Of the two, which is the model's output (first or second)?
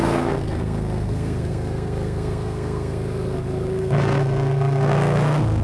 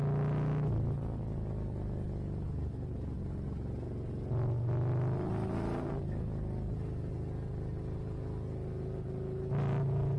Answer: first